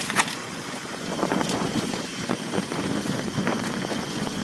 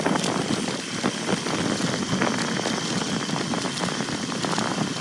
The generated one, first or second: first